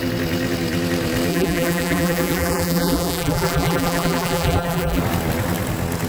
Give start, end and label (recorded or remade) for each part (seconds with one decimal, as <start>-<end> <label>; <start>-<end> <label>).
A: 0.0-1.3 recorded; 1.3-5.0 remade; 5.0-6.1 recorded

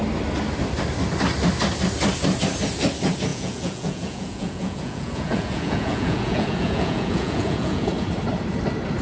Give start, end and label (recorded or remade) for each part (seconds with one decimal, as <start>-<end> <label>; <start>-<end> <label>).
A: 0.0-3.3 recorded; 3.3-7.9 remade; 7.9-9.0 recorded

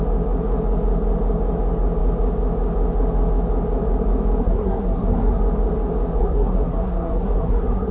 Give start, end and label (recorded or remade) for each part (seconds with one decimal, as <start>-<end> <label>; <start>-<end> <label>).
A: 0.0-4.4 recorded; 4.4-5.4 remade; 5.4-6.2 recorded; 6.2-7.9 remade